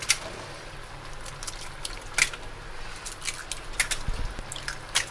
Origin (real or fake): real